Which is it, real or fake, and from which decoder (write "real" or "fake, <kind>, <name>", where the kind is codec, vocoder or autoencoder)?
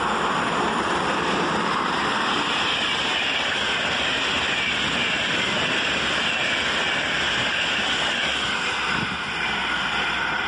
real